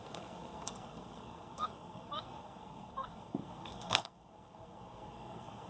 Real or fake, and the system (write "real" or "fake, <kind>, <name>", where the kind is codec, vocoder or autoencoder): fake, codec, SNAC